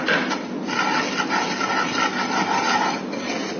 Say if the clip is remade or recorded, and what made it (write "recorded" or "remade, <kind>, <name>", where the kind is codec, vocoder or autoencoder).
recorded